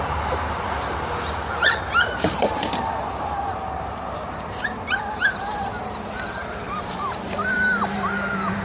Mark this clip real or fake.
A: fake